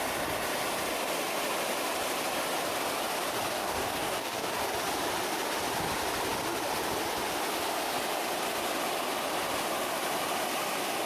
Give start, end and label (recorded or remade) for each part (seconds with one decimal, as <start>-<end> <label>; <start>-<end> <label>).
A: 0.0-3.5 recorded; 3.5-4.6 remade; 4.6-11.1 recorded